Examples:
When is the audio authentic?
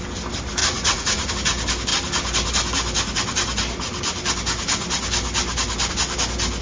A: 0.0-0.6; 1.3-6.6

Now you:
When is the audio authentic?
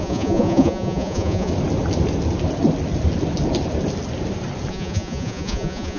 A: 1.5-4.7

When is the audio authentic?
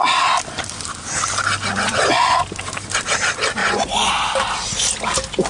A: 0.0-1.7; 2.4-3.6; 4.1-5.5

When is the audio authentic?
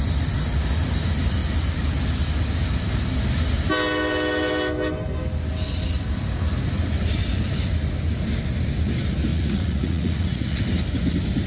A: 0.0-9.3; 10.6-11.5